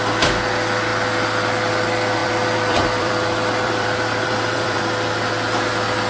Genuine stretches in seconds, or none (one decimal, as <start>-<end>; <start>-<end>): 0.0-2.2; 4.8-6.1

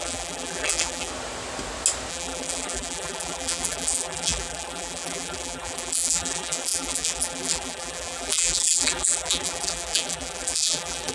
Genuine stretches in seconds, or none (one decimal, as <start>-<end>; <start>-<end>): 1.1-2.1